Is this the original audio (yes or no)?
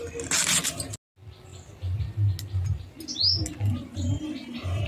yes